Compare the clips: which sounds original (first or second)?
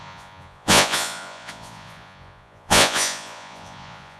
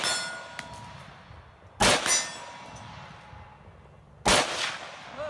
second